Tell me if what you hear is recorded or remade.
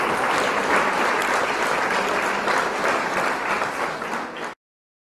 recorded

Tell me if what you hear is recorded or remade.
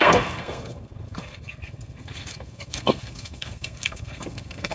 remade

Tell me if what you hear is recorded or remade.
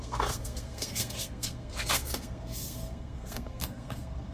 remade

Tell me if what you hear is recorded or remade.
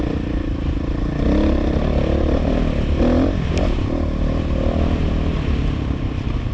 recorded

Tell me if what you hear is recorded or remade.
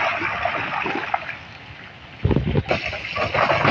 recorded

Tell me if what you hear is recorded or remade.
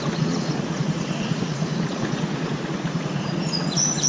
remade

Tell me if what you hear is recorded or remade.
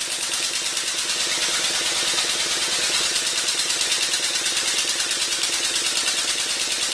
remade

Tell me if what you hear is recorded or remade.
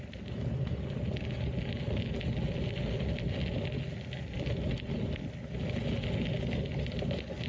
recorded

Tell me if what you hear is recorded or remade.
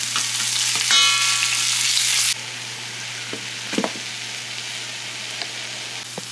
recorded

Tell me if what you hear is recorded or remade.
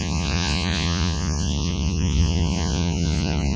remade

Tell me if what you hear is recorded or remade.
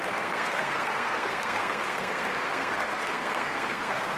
remade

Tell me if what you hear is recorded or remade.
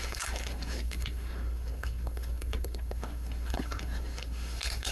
remade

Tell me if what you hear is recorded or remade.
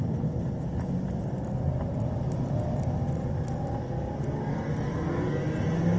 recorded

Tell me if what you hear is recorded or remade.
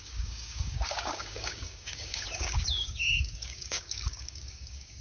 remade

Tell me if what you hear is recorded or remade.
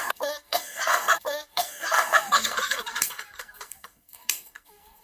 remade